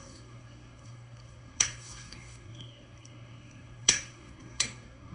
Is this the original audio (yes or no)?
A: no